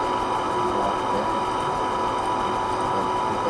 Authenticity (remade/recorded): recorded